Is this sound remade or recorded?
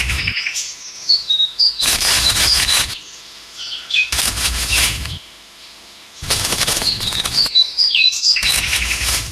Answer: remade